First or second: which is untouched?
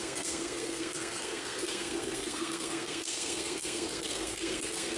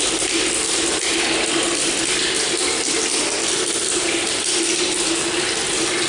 second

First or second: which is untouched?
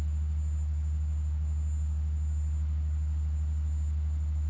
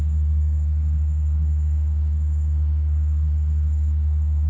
first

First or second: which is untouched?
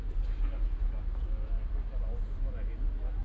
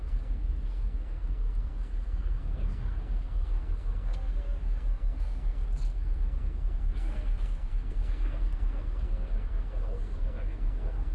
first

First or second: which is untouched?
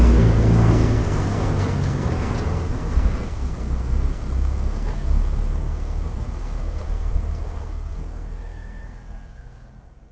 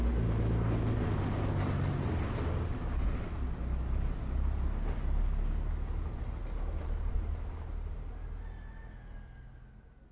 second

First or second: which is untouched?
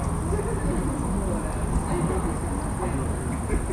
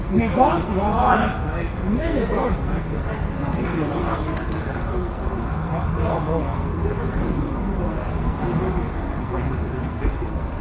first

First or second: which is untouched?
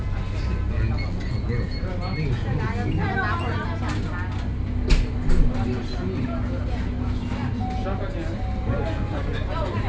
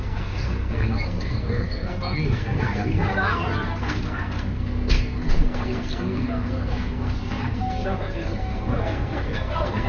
first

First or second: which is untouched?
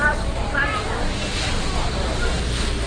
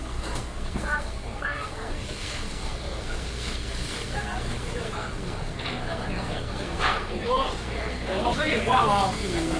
first